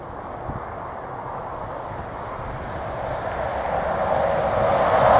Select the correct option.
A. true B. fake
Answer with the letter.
A